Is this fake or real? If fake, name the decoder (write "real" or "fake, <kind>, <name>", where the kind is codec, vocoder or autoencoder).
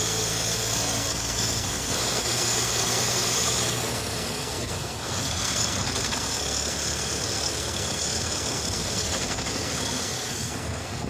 fake, codec, SNAC